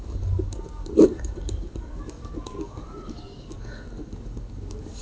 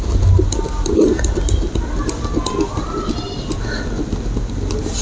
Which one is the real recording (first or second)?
second